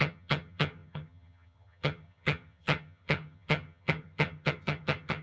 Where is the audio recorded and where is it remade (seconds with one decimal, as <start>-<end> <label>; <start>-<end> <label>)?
0.0-5.2 remade